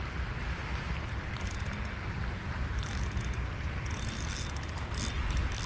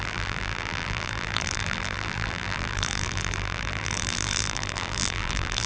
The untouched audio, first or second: first